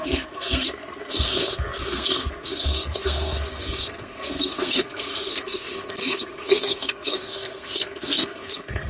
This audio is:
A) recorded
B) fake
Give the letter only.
B